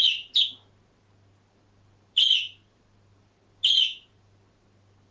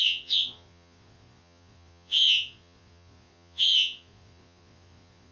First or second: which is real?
first